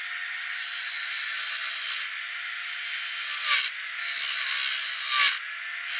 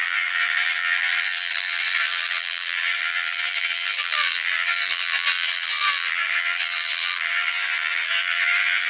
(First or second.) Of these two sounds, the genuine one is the first